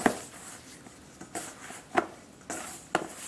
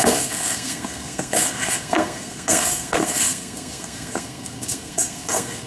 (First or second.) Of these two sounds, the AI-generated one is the second